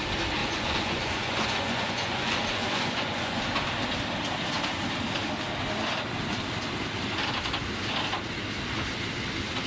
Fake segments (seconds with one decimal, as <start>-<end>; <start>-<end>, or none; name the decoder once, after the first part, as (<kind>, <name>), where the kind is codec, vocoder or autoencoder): 0.4-3.4 (vocoder, Vocos)